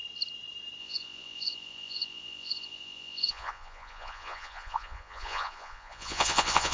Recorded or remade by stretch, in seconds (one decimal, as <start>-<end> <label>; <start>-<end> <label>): 0.0-0.8 recorded; 0.8-6.7 remade